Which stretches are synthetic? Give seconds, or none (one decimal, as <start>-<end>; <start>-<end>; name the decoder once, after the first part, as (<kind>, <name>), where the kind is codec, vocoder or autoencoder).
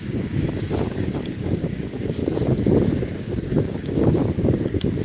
0.0-2.2 (codec, DAC); 3.2-4.2